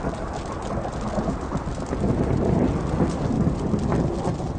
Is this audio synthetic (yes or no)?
no